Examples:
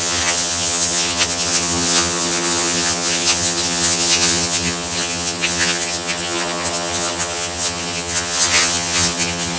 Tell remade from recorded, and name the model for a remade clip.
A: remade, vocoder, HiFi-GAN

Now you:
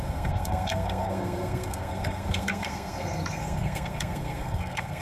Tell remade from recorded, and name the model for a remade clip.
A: remade, codec, SNAC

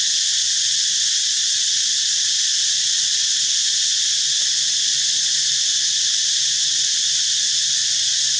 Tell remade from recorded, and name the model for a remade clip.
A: recorded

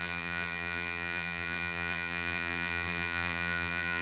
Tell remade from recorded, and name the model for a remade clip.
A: remade, vocoder, BigVGAN v2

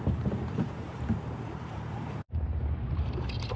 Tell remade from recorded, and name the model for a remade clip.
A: remade, vocoder, BigVGAN v2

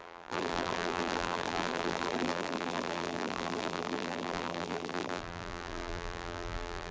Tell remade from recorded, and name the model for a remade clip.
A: remade, vocoder, BigVGAN v2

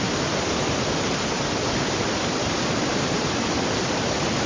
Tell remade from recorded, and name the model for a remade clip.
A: recorded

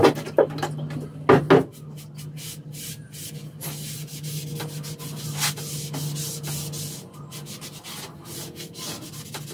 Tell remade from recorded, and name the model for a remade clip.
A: recorded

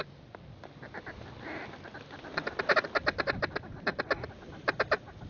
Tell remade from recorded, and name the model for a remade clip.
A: recorded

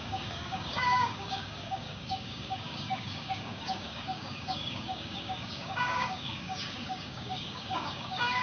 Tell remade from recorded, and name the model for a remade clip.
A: remade, codec, DAC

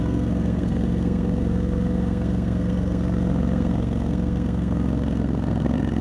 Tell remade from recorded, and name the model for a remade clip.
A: remade, codec, SNAC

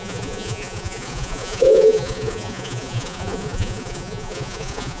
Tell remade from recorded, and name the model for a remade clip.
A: remade, vocoder, Vocos